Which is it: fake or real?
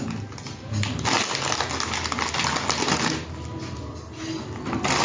real